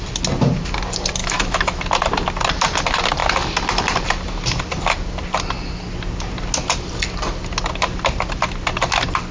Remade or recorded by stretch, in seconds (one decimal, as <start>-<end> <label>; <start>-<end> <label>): 0.0-1.2 recorded; 1.2-1.8 remade; 1.8-9.3 recorded